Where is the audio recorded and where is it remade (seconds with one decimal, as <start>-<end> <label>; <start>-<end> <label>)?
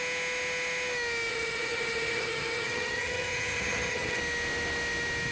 0.0-1.3 recorded; 1.3-4.2 remade; 4.2-5.3 recorded